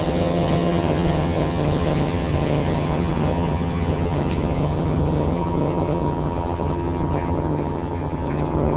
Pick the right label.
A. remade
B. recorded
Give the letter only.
A